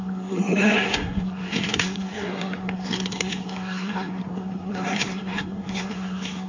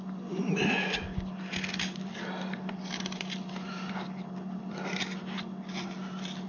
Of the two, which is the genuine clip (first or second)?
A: second